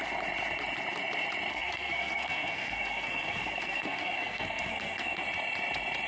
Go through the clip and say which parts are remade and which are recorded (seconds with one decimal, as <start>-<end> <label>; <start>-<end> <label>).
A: 0.0-1.5 recorded; 1.5-5.2 remade; 5.2-6.1 recorded

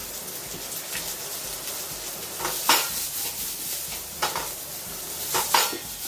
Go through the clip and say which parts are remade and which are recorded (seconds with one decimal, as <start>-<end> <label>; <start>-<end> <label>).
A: 0.0-6.1 recorded

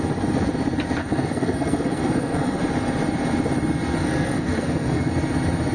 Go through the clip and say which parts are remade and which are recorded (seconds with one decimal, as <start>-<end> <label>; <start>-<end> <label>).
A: 0.0-1.0 recorded; 1.0-2.6 remade; 2.6-4.0 recorded; 4.0-5.1 remade; 5.1-5.7 recorded